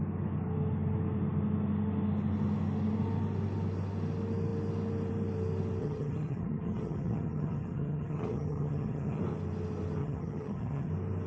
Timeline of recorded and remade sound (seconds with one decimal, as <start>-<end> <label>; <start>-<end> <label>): 0.0-5.8 recorded; 5.8-9.2 remade; 9.2-10.0 recorded; 10.0-10.9 remade; 10.9-11.3 recorded